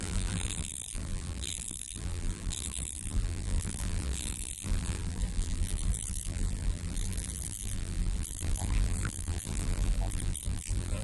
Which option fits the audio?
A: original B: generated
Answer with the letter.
B